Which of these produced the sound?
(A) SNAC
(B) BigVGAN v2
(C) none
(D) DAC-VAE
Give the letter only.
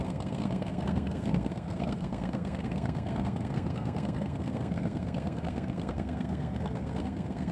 A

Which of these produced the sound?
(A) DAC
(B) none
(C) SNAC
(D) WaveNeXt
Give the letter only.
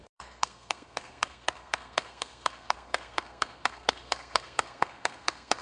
C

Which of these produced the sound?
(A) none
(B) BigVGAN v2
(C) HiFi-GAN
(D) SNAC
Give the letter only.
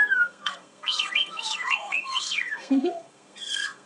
D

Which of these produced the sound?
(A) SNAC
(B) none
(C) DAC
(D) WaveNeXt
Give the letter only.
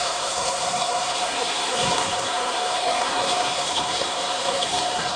A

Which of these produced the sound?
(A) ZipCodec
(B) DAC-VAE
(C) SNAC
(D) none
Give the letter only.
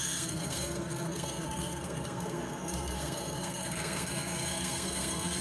C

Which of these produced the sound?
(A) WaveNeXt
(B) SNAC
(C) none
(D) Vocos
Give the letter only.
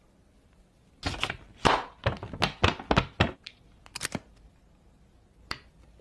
C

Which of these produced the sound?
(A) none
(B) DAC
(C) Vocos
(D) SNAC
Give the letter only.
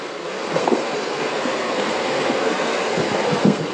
D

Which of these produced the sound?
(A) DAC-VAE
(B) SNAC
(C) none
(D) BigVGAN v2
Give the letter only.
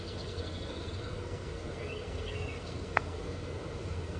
B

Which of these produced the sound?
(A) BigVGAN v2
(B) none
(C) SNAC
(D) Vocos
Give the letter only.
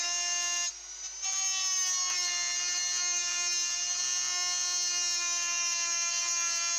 B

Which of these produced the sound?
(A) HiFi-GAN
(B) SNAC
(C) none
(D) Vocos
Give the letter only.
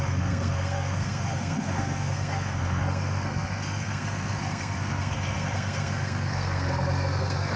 B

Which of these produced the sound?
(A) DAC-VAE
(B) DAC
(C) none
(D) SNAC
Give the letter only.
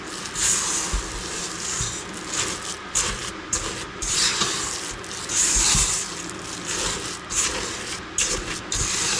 C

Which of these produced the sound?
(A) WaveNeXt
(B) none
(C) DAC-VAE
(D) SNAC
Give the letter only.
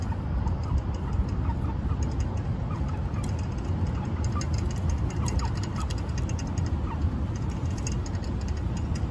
B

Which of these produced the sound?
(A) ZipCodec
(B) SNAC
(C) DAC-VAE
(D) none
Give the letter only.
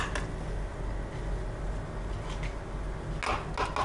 D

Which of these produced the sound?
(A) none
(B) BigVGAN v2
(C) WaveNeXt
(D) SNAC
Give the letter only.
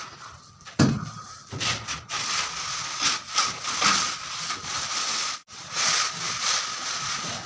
A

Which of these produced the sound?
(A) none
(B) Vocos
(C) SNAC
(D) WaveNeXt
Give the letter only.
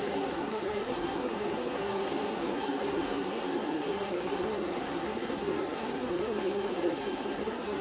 C